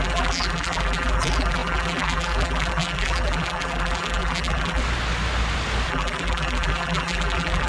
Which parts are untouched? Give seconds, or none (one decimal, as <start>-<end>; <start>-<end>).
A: 4.8-5.9